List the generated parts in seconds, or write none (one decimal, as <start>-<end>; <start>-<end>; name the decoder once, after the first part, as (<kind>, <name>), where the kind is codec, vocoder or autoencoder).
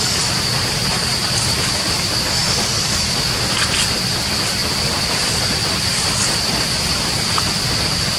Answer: none